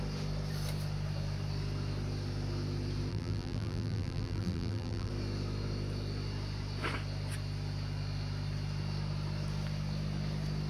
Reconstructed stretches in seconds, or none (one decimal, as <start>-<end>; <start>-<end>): 3.1-5.1